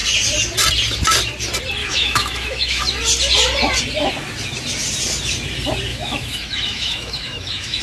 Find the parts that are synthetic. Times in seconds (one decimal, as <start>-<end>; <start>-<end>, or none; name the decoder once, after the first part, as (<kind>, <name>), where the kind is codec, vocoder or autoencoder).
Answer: 1.8-2.8 (autoencoder, DAC-VAE); 5.9-7.8